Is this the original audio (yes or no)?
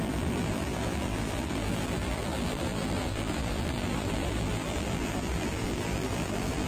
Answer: no